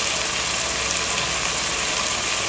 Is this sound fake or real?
real